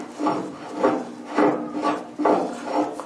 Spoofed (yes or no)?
no